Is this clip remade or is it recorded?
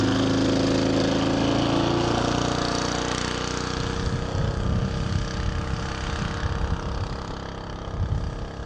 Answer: recorded